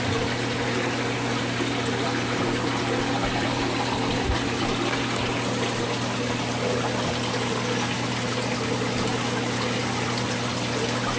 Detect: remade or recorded recorded